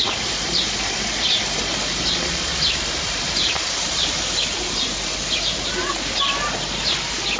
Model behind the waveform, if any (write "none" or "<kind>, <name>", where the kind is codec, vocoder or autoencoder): none